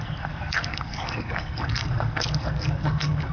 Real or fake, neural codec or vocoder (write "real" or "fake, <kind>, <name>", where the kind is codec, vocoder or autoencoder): fake, codec, SNAC